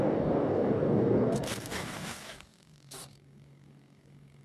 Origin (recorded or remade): remade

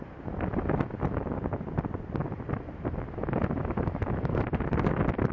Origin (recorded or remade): recorded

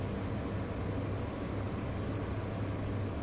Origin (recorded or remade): recorded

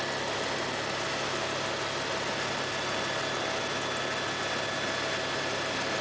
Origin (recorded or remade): recorded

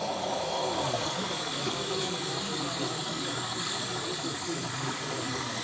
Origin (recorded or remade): remade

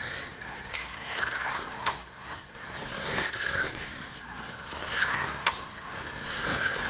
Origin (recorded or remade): remade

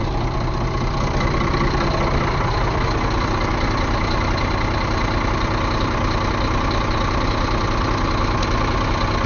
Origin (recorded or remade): recorded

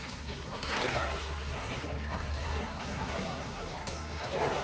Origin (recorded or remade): remade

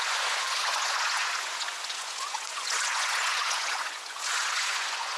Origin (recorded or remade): remade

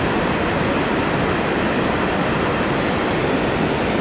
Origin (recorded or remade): recorded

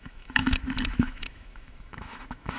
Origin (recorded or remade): remade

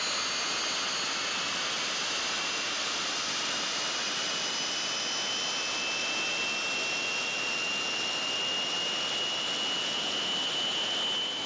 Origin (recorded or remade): recorded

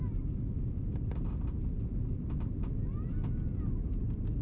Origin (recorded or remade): recorded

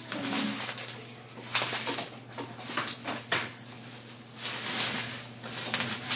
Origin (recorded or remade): recorded